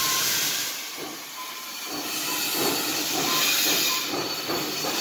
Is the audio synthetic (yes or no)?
yes